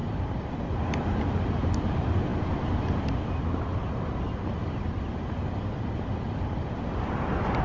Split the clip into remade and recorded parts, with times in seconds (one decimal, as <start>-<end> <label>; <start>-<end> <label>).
0.0-0.5 remade; 0.5-7.6 recorded